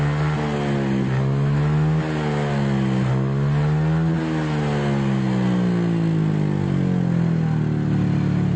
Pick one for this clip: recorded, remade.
recorded